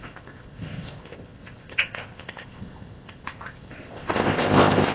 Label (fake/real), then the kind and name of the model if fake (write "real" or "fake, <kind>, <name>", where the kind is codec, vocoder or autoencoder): fake, codec, ZipCodec